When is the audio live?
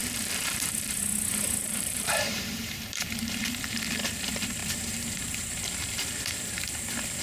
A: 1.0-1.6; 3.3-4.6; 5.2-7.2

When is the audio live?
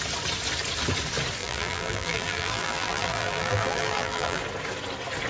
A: 0.0-1.4; 4.4-5.3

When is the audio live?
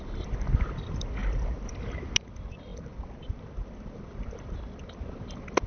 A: 0.0-1.2; 1.8-5.7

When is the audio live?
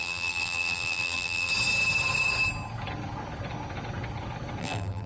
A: 1.5-4.6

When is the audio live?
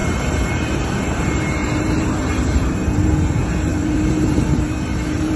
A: 3.0-3.7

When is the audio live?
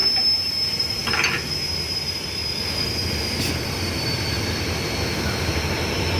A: 0.0-0.6; 2.4-6.2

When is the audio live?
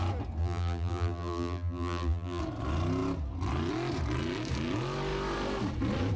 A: 0.0-0.4; 2.4-6.2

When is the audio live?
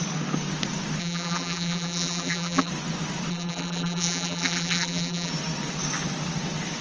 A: 0.0-1.0; 2.7-3.3; 5.3-6.8